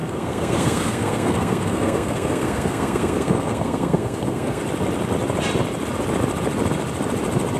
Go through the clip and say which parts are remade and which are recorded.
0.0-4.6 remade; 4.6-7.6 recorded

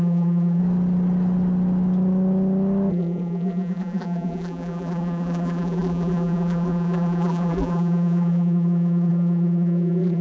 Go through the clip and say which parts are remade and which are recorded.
0.0-0.6 remade; 0.6-2.9 recorded; 2.9-10.2 remade